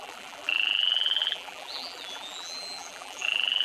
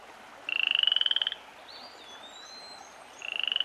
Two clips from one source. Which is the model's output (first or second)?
first